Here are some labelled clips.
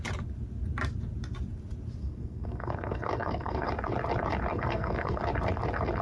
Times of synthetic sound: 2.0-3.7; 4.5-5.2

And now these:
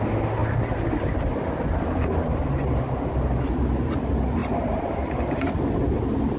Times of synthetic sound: 4.4-5.0

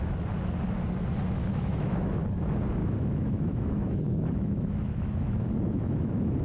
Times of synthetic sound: 1.4-2.2; 2.8-6.4